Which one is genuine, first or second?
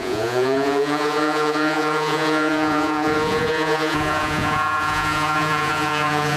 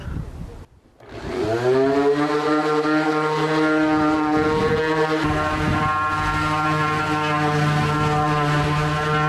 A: second